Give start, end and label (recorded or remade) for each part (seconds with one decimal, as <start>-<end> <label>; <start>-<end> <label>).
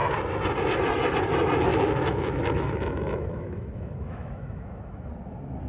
0.0-1.7 recorded; 1.7-5.1 remade; 5.1-5.7 recorded